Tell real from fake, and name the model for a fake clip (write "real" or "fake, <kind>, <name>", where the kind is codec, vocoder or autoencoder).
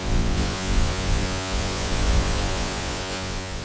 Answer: fake, vocoder, Vocos